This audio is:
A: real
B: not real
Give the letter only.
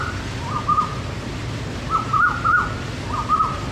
A